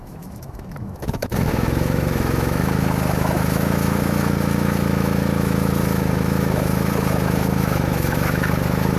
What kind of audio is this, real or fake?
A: fake